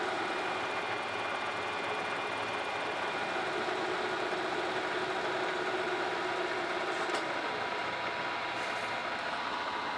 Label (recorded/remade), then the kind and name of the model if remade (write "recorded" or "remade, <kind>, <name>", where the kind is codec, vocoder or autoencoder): recorded